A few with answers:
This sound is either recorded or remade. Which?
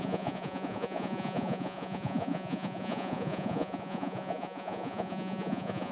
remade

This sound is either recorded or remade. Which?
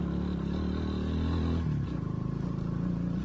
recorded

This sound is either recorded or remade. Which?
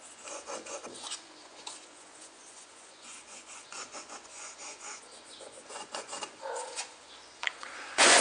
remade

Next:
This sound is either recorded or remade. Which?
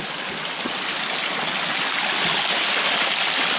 recorded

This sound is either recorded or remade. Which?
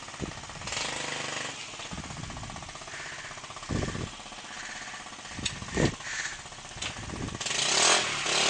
recorded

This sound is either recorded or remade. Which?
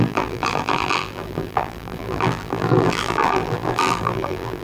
remade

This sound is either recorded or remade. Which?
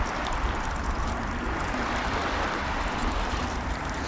remade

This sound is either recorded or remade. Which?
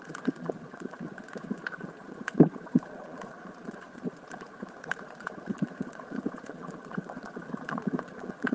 remade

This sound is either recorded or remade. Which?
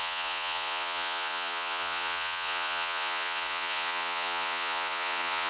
remade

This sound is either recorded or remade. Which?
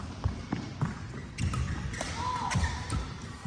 recorded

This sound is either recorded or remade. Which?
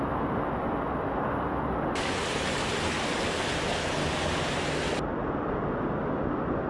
recorded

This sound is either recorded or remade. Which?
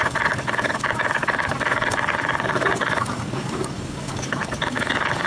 remade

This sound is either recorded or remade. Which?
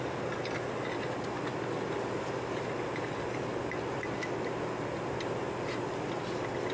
recorded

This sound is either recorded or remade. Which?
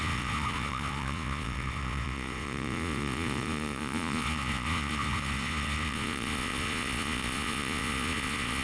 remade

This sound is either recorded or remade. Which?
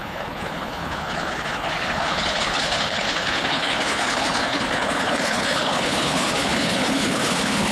remade